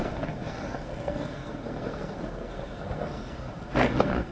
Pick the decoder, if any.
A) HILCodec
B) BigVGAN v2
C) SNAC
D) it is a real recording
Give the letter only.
C